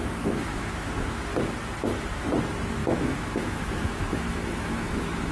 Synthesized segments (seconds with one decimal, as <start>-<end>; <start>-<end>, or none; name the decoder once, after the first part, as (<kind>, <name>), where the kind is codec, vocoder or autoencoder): 0.0-1.2 (autoencoder, DAC-VAE); 2.8-5.3